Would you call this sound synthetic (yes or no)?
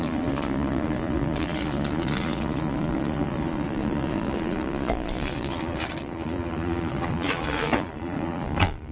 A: yes